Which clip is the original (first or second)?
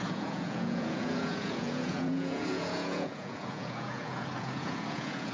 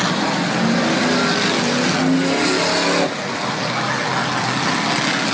second